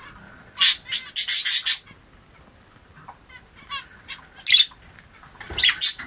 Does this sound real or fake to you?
real